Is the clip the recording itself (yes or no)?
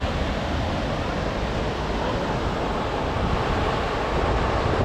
yes